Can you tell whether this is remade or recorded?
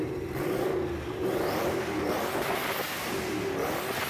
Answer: recorded